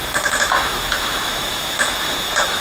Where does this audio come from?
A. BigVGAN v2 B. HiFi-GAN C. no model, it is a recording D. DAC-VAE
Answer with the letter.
D